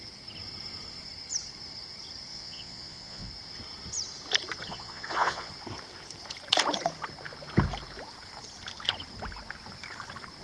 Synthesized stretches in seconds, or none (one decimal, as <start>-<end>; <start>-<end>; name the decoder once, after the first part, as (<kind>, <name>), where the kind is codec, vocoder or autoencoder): 2.3-3.3 (vocoder, Vocos); 4.7-5.5